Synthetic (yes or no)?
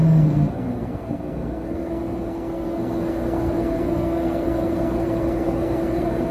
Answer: yes